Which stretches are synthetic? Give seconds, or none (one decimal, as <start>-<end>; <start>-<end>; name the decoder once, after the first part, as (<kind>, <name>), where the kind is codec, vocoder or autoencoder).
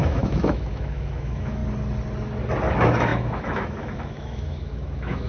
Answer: 0.0-1.6 (autoencoder, DAC-VAE); 2.7-5.3